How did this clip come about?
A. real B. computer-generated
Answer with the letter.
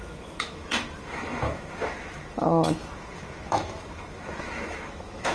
B